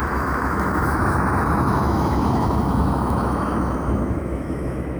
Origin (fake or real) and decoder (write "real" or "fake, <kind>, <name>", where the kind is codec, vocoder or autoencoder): fake, autoencoder, DAC-VAE